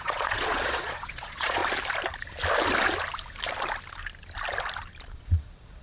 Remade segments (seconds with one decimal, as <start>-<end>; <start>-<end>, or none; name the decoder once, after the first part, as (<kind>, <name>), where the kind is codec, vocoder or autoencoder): 0.0-1.6 (vocoder, Vocos); 5.1-5.8